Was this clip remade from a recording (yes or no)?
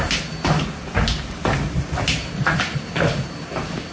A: no